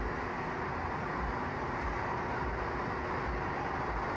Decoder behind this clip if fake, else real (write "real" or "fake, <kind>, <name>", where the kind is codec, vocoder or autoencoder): real